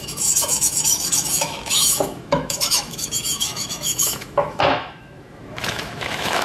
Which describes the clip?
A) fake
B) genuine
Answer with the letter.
A